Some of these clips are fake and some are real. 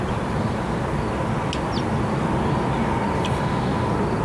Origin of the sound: real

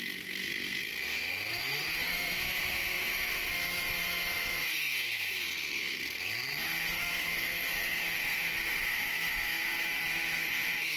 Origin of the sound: fake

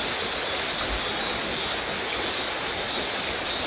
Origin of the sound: real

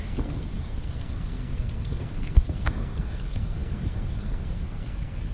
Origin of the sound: fake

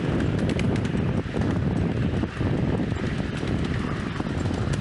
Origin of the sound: real